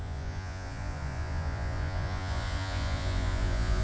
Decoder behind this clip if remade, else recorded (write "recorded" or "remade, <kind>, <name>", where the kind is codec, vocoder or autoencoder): remade, vocoder, Vocos